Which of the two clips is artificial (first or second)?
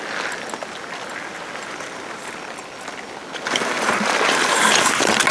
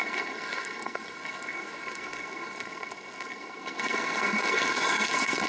second